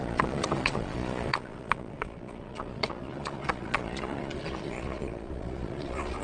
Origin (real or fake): fake